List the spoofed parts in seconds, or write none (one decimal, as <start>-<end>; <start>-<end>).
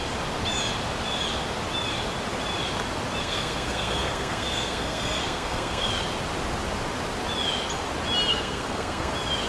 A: 3.2-5.9; 8.3-9.1